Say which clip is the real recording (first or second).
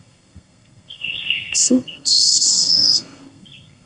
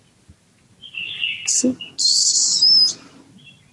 second